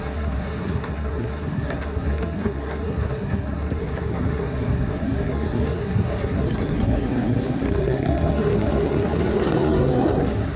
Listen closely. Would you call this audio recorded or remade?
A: remade